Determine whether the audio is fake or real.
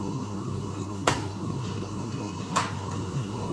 fake